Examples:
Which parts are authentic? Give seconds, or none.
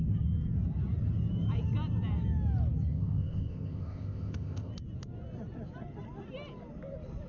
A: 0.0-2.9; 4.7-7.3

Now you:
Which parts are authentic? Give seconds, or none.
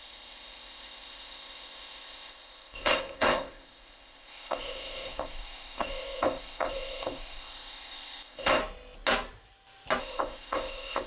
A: 8.6-10.0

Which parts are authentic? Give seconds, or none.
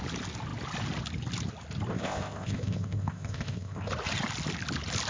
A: 0.0-1.9; 3.9-5.1